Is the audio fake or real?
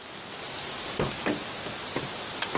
real